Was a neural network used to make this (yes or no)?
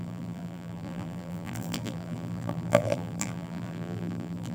yes